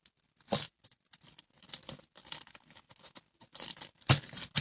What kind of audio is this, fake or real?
real